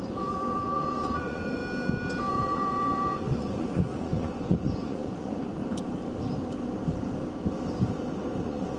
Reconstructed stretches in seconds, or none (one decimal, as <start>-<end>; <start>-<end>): 0.0-1.6; 2.3-5.6; 8.4-8.8